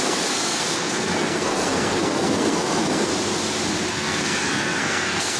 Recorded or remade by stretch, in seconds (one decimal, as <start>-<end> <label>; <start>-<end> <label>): 0.0-3.1 remade; 3.1-3.9 recorded; 3.9-5.4 remade